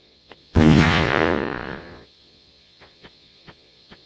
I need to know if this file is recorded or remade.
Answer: remade